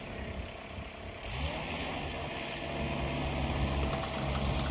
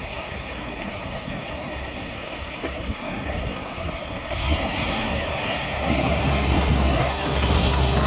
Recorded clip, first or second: first